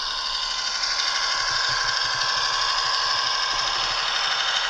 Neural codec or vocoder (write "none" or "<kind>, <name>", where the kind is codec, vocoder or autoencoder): none